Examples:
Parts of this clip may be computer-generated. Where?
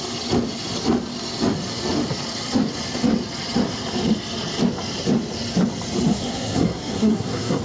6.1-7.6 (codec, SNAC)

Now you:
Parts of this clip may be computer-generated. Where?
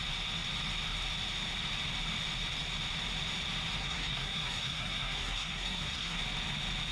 3.8-6.2 (codec, SNAC)